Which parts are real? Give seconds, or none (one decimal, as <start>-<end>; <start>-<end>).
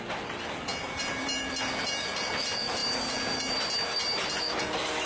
0.0-0.7; 1.5-5.0